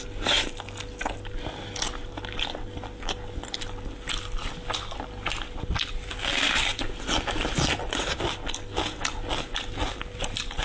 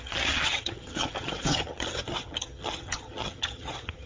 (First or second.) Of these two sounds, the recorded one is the first